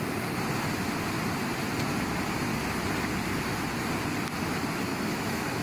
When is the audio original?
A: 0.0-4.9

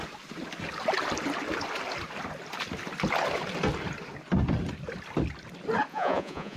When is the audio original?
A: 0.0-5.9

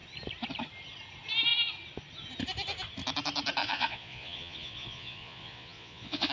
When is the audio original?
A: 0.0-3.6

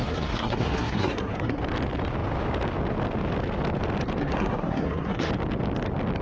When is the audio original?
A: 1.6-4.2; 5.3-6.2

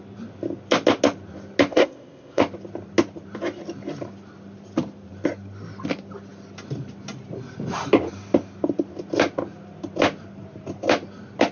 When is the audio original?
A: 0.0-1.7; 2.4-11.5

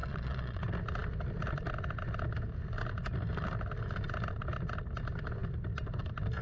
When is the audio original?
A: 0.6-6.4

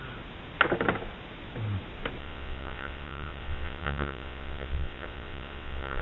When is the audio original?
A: 0.0-2.2

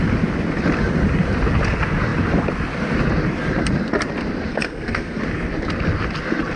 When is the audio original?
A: 0.0-4.5; 5.2-6.6